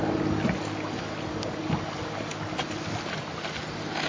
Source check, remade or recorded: recorded